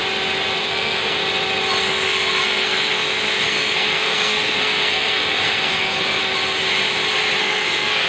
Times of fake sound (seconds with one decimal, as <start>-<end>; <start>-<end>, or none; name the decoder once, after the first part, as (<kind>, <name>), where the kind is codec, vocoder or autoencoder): 0.6-1.2 (codec, SNAC); 1.8-6.2; 7.4-8.1